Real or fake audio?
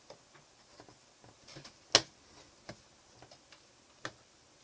real